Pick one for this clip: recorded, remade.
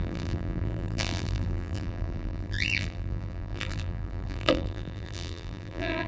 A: remade